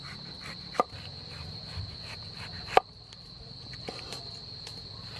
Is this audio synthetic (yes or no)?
no